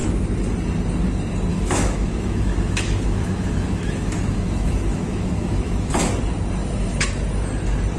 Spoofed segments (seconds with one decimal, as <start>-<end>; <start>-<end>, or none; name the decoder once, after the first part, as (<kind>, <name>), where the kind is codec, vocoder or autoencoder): 1.5-6.1 (autoencoder, DAC-VAE); 6.6-7.1